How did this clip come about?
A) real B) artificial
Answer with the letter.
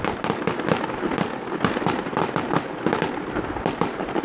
A